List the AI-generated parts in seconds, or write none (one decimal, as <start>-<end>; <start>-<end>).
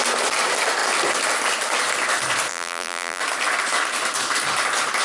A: 2.5-3.2